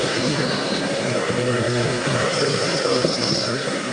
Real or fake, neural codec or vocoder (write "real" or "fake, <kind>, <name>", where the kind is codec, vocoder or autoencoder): fake, codec, SNAC